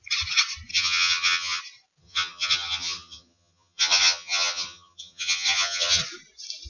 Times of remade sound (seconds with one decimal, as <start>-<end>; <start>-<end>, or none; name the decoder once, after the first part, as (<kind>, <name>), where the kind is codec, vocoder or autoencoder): 0.7-1.6 (vocoder, HiFi-GAN); 2.0-6.0